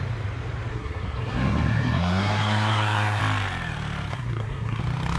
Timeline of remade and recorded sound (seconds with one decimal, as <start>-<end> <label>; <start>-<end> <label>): 0.0-0.7 recorded; 0.7-3.2 remade; 3.2-4.1 recorded; 4.1-4.8 remade; 4.8-5.2 recorded